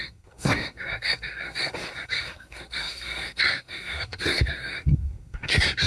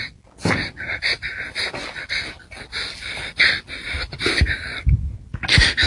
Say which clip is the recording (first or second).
second